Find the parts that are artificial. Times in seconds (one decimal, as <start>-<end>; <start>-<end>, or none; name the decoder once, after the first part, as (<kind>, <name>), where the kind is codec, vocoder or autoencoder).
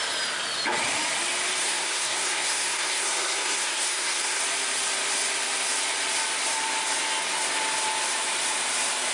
1.6-4.4 (codec, SNAC)